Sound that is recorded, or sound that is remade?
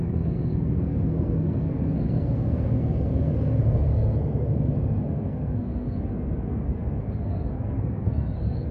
remade